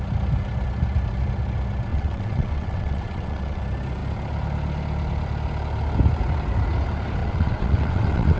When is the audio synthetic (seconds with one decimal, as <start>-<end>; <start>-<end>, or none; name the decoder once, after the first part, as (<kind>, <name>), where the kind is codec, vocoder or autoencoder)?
1.9-3.6 (vocoder, WaveNeXt); 7.2-8.4